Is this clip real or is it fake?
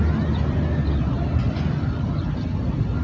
real